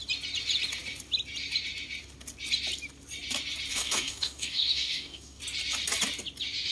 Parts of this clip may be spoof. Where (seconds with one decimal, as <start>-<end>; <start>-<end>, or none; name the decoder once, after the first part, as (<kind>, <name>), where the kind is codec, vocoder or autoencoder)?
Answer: 3.7-5.4 (codec, DAC)